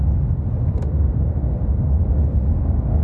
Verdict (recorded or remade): recorded